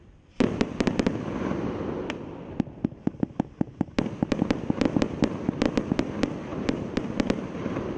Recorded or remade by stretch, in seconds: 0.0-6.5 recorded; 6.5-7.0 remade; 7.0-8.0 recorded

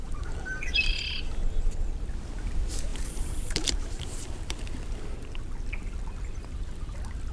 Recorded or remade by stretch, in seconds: 0.0-0.9 remade; 0.9-2.9 recorded; 2.9-4.6 remade; 4.6-7.3 recorded

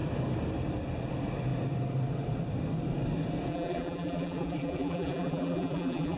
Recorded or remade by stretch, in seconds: 0.0-3.5 recorded; 3.5-6.2 remade

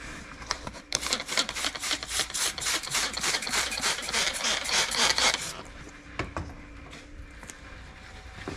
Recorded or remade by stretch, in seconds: 0.0-8.6 remade

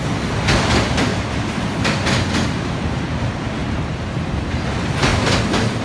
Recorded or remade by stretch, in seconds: 0.0-1.1 recorded; 1.1-1.8 remade; 1.8-3.6 recorded; 3.6-4.6 remade; 4.6-5.8 recorded

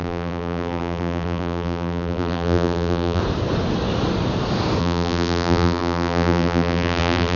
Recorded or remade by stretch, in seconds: 0.0-3.2 remade; 3.2-4.8 recorded; 4.8-7.4 remade